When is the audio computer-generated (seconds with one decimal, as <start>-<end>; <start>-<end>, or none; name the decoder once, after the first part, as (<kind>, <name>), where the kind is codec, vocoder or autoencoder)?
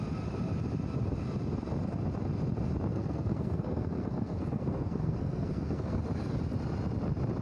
2.9-6.0 (codec, SNAC)